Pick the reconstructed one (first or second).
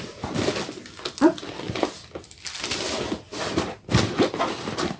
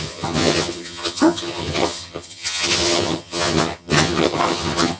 second